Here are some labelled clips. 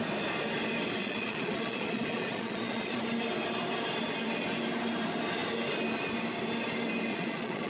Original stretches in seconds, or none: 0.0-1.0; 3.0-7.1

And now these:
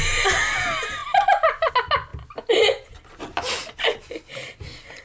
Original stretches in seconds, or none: 0.0-5.0

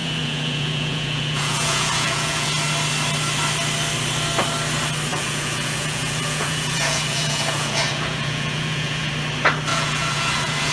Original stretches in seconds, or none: 2.5-5.1; 9.1-9.7

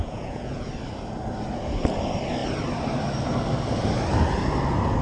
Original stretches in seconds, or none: 0.7-5.0

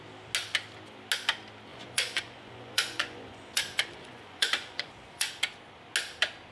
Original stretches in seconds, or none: 0.0-1.7; 5.3-6.5

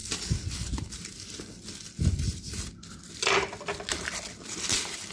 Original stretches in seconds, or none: 0.0-5.1